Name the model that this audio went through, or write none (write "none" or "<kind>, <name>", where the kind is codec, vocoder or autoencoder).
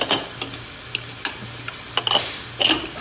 none